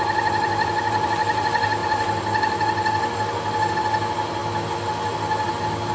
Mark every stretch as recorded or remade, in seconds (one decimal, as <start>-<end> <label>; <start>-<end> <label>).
0.0-5.9 recorded